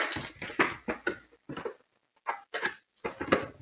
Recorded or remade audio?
recorded